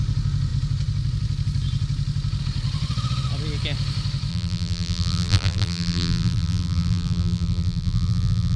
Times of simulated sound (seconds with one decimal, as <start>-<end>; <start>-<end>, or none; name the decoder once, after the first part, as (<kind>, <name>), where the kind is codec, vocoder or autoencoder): 4.3-8.6 (vocoder, BigVGAN v2)